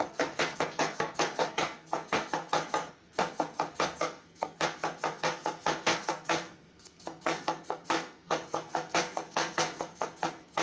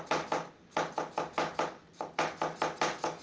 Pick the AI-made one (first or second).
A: first